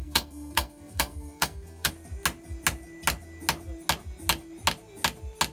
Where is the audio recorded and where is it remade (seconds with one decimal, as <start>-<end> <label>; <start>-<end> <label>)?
0.0-1.9 remade; 1.9-5.5 recorded